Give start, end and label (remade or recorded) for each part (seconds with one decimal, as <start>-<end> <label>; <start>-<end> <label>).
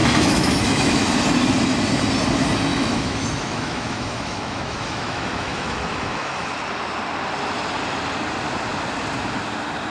0.0-1.1 remade; 1.1-2.7 recorded; 2.7-6.5 remade; 6.5-9.9 recorded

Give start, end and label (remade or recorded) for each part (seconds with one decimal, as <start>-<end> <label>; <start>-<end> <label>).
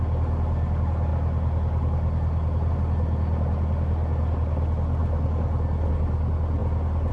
0.0-7.1 recorded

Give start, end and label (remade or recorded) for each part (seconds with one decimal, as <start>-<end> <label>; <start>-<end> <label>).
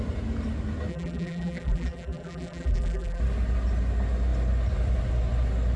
0.0-0.9 recorded; 0.9-3.2 remade; 3.2-5.8 recorded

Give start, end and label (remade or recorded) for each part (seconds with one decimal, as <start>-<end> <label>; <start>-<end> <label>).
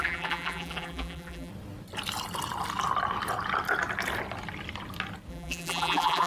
0.0-1.5 remade; 1.5-5.3 recorded; 5.3-6.3 remade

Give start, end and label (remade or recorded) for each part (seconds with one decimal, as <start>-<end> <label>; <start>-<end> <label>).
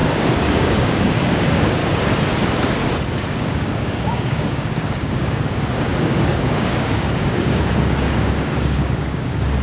0.0-1.8 remade; 1.8-3.4 recorded; 3.4-9.6 remade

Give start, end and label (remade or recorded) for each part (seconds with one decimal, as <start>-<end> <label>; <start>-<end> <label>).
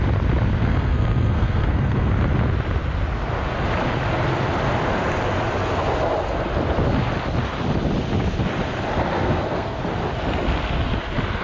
0.0-0.6 recorded; 0.6-2.1 remade; 2.1-9.2 recorded; 9.2-9.8 remade; 9.8-11.4 recorded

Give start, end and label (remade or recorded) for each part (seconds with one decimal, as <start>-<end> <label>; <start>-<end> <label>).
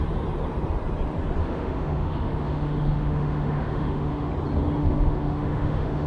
0.0-1.4 recorded; 1.4-4.3 remade; 4.3-4.8 recorded; 4.8-6.1 remade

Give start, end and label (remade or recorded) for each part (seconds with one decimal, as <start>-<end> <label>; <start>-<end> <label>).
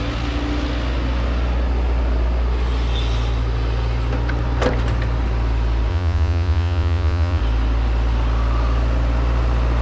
0.0-5.9 recorded; 5.9-7.4 remade; 7.4-9.8 recorded